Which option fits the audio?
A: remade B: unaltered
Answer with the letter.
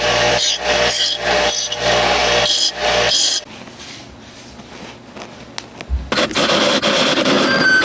B